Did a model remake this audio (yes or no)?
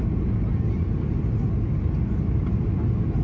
no